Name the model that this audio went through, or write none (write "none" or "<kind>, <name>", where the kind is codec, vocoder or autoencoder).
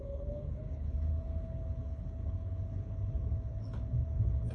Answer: codec, HILCodec